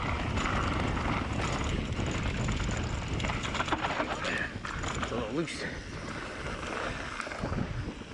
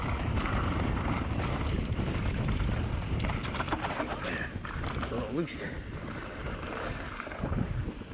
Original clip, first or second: first